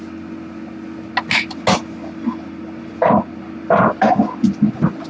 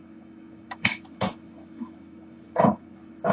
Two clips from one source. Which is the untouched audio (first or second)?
first